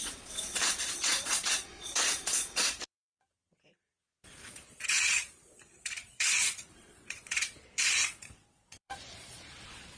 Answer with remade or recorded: remade